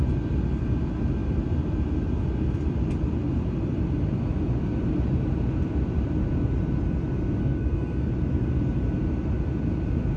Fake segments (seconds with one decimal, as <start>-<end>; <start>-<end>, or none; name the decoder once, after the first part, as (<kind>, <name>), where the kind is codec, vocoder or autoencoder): 7.4-8.1 (codec, SNAC)